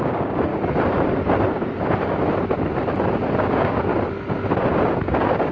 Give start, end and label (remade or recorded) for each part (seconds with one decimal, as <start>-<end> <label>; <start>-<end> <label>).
0.0-0.5 remade; 0.5-3.4 recorded; 3.4-3.9 remade; 3.9-5.0 recorded; 5.0-5.5 remade